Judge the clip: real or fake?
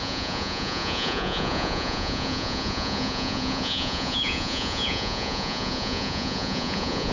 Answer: fake